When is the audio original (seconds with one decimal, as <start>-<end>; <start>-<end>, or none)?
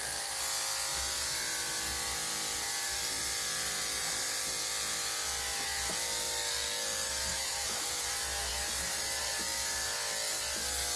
0.0-7.3; 8.1-11.0